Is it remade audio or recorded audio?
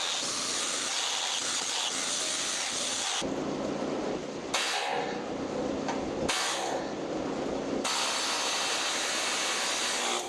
recorded